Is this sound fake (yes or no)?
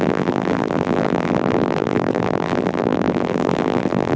yes